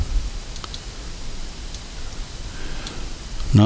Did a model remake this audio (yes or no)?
no